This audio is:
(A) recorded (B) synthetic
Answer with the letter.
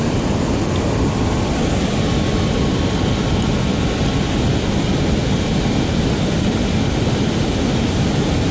A